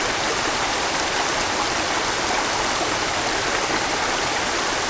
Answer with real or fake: fake